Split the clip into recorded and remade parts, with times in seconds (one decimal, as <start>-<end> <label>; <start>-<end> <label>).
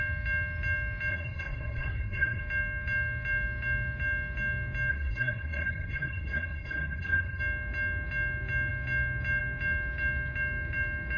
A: 0.0-1.1 recorded; 1.1-2.4 remade; 2.4-4.9 recorded; 4.9-7.4 remade; 7.4-11.2 recorded